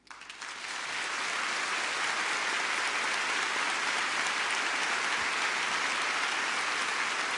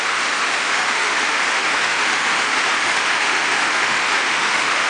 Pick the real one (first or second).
first